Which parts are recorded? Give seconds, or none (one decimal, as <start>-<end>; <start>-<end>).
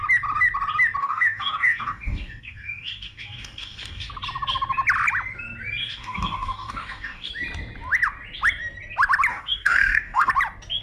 0.0-1.0; 4.1-5.8; 7.3-9.3; 10.3-10.8